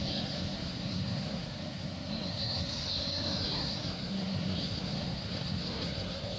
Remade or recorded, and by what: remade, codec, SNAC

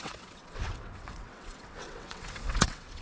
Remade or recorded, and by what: remade, vocoder, WaveNeXt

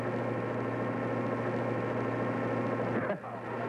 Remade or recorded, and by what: recorded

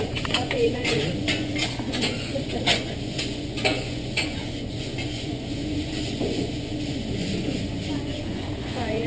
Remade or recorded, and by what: remade, vocoder, Vocos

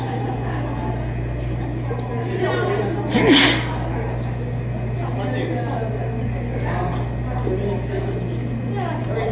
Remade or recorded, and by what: recorded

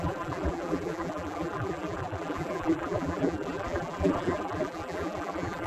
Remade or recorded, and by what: remade, vocoder, BigVGAN v2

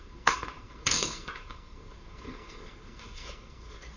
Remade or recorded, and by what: remade, codec, SNAC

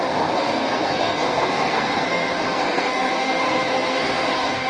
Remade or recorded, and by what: remade, codec, SNAC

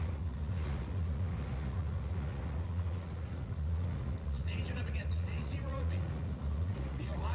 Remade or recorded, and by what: remade, vocoder, Vocos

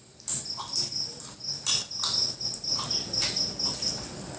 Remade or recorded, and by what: recorded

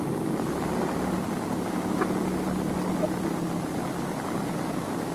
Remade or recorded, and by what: remade, vocoder, BigVGAN v2